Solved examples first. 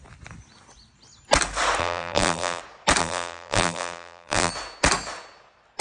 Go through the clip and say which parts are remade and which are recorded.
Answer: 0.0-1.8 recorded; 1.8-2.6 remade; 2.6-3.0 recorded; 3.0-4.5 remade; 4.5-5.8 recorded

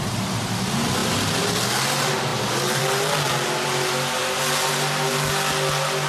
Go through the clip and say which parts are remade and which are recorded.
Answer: 0.0-6.1 recorded

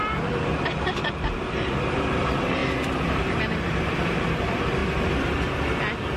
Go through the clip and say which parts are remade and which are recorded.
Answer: 0.0-2.6 remade; 2.6-3.1 recorded; 3.1-4.8 remade; 4.8-6.2 recorded